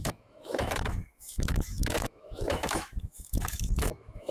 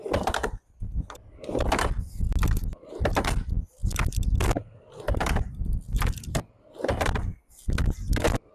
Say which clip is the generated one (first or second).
first